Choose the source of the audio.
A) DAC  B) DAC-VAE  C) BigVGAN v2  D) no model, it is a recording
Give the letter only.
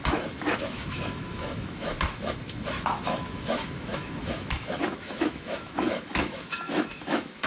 B